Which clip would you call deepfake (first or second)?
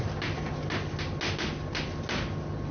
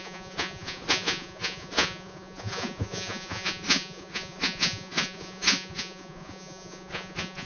second